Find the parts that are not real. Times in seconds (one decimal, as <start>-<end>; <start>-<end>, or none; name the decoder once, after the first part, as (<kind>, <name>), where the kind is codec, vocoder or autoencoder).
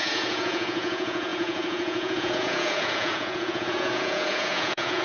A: 0.0-5.0 (vocoder, Vocos)